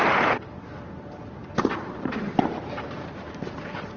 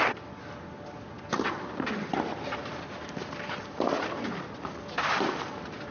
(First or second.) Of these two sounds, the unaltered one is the second